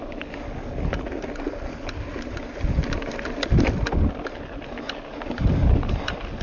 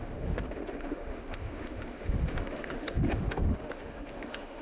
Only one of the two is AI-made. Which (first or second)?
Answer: second